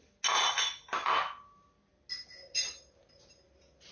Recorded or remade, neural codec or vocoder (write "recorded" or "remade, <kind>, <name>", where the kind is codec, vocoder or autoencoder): recorded